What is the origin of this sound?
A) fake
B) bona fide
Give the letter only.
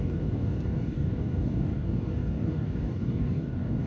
A